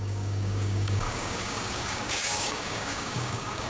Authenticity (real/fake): fake